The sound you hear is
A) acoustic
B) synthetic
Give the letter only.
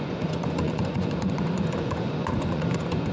B